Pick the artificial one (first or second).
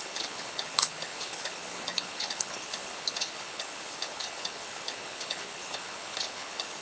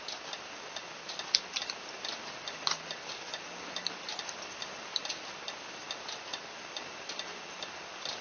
first